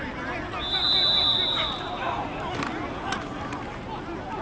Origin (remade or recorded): recorded